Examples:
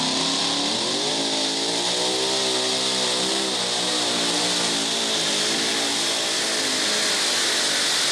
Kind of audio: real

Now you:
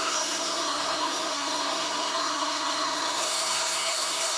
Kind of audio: fake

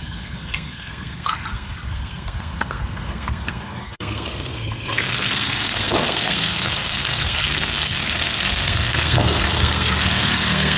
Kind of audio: fake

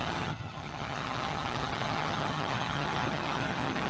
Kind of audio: fake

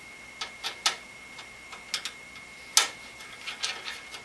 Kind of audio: real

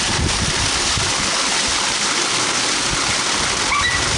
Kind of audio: real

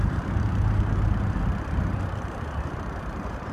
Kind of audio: fake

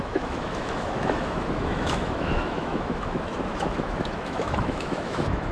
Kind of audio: fake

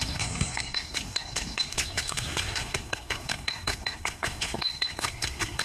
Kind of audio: fake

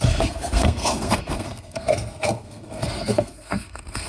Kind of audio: fake